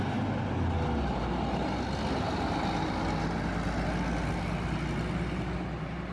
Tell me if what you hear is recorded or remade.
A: recorded